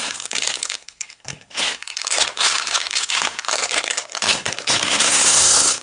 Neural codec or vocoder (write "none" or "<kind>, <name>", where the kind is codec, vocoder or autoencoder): codec, SNAC